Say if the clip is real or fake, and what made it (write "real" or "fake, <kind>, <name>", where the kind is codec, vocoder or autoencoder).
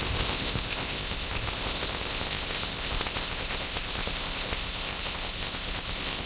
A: fake, codec, ZipCodec